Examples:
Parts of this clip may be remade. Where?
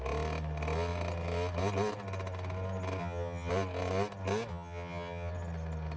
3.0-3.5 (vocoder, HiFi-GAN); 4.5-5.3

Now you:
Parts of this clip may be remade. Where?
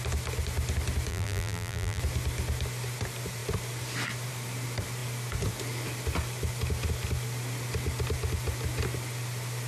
1.1-2.0 (vocoder, BigVGAN v2)